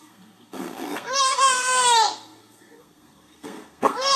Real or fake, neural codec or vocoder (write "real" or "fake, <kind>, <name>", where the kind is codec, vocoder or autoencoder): fake, codec, SNAC